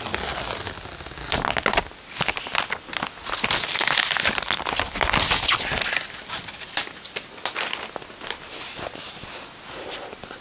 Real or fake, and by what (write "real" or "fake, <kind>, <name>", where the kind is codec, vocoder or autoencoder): real